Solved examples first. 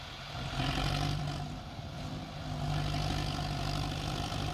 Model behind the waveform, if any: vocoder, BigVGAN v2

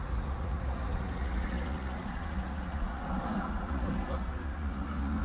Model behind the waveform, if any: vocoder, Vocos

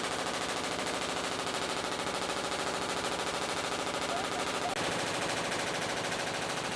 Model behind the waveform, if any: none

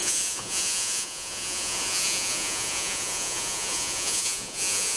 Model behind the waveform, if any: vocoder, Vocos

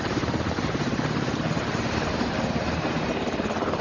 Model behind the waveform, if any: vocoder, BigVGAN v2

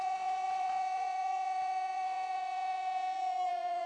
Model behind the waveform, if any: vocoder, Vocos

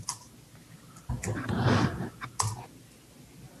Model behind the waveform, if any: none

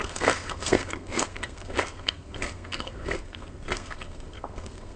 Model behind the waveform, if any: codec, SNAC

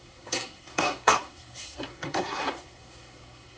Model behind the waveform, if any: codec, SNAC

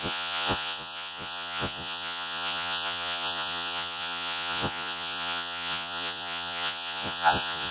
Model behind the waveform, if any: vocoder, Vocos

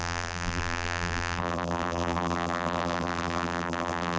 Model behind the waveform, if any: vocoder, BigVGAN v2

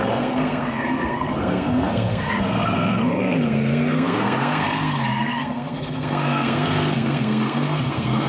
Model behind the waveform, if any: codec, SNAC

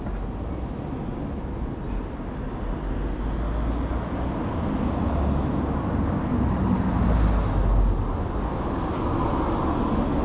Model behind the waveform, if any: none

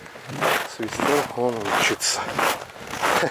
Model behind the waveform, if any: none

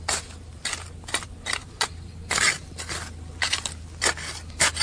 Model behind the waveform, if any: none